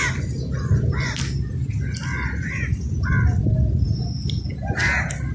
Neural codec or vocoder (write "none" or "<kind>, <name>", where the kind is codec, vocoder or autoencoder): none